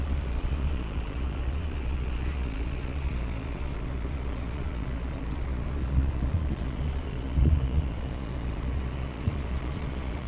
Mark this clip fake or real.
fake